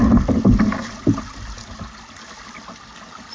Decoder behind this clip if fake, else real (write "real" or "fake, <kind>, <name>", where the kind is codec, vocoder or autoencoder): real